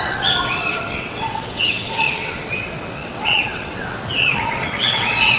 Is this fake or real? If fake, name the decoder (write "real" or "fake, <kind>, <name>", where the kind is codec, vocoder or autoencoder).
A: fake, vocoder, WaveNeXt